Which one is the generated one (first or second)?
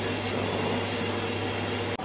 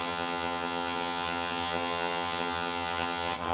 second